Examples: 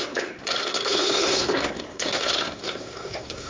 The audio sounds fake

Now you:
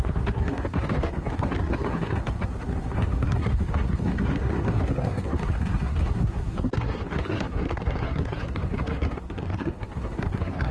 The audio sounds fake